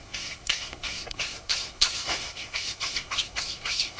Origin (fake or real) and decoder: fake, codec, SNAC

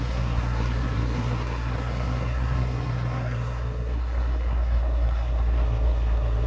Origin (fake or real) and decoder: fake, codec, SNAC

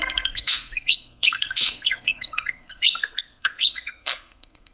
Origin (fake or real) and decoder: fake, codec, SNAC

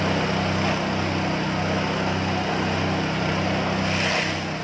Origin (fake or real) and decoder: real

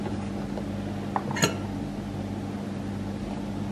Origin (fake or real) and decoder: real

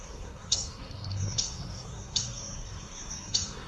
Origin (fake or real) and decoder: fake, codec, SNAC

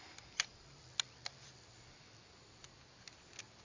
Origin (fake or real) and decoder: real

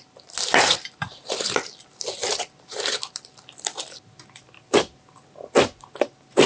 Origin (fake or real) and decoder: real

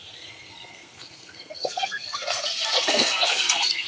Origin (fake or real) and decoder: fake, codec, SNAC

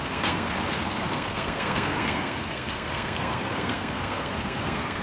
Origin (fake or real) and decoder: fake, codec, SNAC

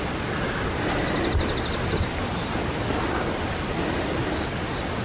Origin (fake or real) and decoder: real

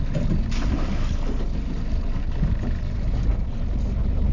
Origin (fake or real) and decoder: real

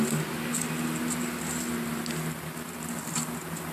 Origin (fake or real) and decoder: real